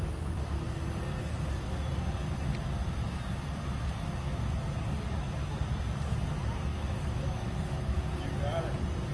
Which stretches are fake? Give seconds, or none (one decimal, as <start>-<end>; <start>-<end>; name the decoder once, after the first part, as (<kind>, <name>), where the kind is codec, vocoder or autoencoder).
6.7-8.0 (autoencoder, DAC-VAE)